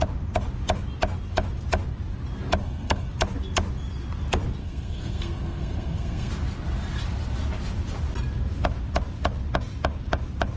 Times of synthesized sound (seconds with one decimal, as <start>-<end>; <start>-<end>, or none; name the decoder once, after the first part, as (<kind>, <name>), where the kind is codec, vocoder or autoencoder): 2.6-3.1 (codec, SNAC); 4.6-6.3